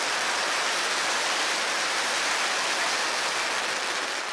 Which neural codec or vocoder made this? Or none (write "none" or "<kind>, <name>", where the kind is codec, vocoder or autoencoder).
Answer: none